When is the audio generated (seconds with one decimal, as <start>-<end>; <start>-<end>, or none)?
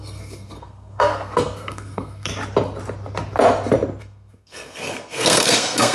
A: 0.0-2.3; 4.0-5.9